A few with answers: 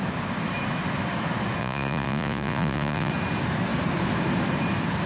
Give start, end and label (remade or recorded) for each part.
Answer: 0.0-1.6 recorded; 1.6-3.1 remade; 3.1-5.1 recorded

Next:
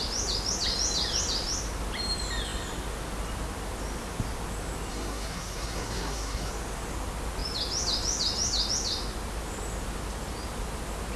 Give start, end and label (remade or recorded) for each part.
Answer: 0.0-4.9 recorded; 4.9-6.5 remade; 6.5-11.2 recorded

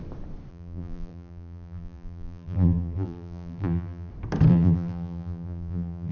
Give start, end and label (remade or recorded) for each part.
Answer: 0.0-0.5 recorded; 0.5-4.1 remade; 4.1-4.5 recorded; 4.5-6.1 remade

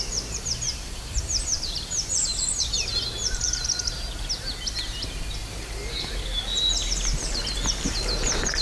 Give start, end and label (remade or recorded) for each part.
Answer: 0.0-2.9 remade; 2.9-7.2 recorded; 7.2-8.6 remade

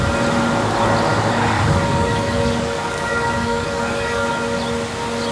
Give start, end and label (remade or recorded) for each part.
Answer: 0.0-1.1 recorded; 1.1-4.3 remade; 4.3-5.3 recorded

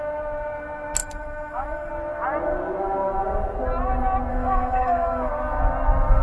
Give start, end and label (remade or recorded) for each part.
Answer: 0.0-1.0 recorded; 1.0-1.9 remade; 1.9-4.3 recorded; 4.3-5.3 remade; 5.3-6.2 recorded

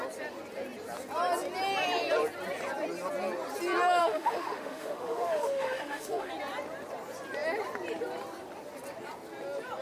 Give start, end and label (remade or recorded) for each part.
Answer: 0.0-4.0 recorded; 4.0-6.3 remade; 6.3-9.8 recorded